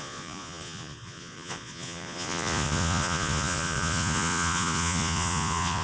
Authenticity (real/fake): fake